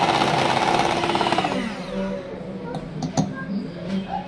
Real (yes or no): yes